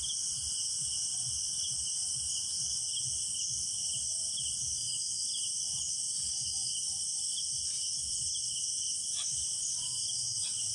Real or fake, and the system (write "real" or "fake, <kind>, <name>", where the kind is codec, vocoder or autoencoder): real